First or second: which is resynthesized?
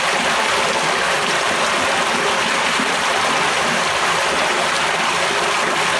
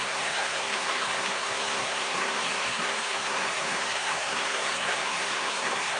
second